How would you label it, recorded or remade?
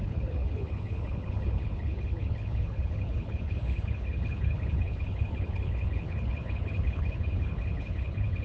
remade